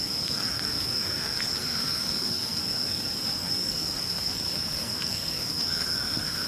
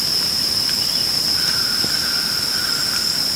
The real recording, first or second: second